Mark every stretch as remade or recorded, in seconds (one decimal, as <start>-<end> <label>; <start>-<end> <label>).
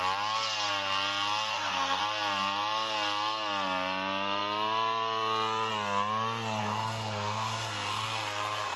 0.0-1.5 recorded; 1.5-2.0 remade; 2.0-6.6 recorded; 6.6-8.8 remade